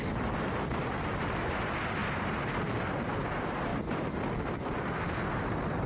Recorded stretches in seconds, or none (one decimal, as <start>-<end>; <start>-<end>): 0.0-3.7; 4.8-5.9